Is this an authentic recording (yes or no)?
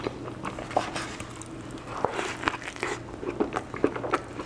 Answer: yes